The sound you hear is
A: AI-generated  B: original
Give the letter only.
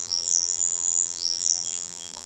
A